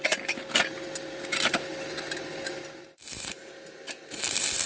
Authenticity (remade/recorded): recorded